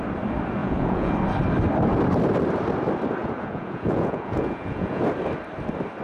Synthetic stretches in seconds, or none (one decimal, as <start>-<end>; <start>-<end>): 0.6-1.1; 3.2-5.0